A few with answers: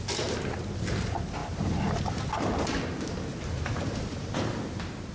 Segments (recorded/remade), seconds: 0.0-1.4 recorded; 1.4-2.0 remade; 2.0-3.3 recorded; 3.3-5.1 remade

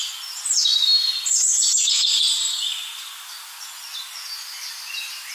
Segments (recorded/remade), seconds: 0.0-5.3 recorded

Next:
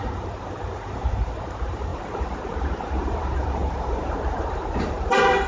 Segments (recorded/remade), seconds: 0.0-5.5 remade